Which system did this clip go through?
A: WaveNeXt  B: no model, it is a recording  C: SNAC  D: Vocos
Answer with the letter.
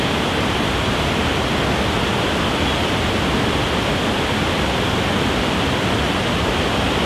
B